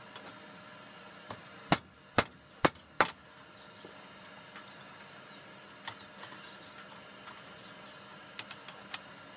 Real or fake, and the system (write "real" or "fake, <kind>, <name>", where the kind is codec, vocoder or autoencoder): real